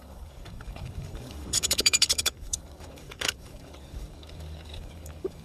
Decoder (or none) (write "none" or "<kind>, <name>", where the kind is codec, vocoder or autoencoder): codec, DAC